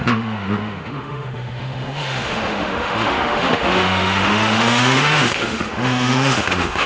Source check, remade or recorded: remade